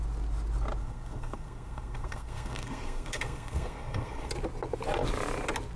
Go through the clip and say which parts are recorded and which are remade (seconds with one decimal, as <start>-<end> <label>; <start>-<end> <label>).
0.0-0.8 recorded; 0.8-4.3 remade; 4.3-5.8 recorded